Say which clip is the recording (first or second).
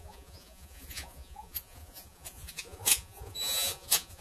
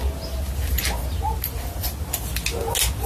second